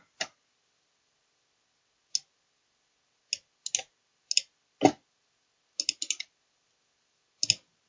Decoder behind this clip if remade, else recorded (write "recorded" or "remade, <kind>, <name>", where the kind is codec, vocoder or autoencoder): recorded